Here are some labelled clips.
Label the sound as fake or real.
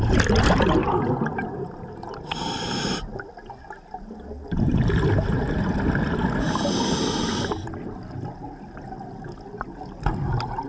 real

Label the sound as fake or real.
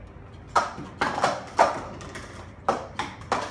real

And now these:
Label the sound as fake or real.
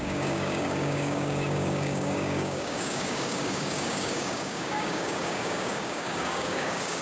fake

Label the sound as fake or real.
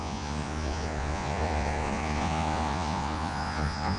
fake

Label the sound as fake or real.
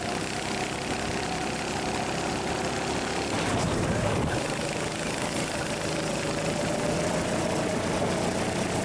real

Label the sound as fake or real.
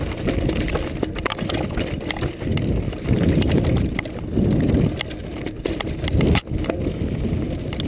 real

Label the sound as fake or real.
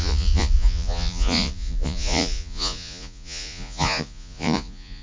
fake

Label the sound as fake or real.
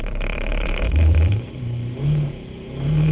fake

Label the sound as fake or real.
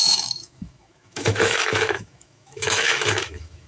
fake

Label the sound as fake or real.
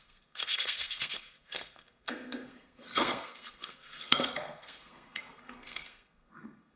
fake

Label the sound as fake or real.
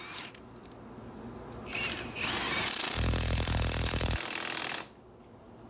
real